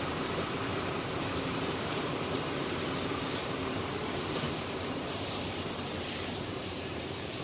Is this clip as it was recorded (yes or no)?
no